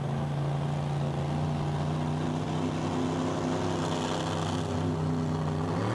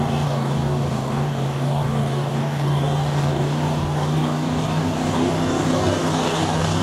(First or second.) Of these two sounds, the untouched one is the first